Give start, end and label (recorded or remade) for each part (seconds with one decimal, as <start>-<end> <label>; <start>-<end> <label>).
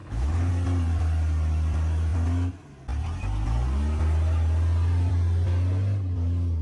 0.0-0.5 remade; 0.5-6.6 recorded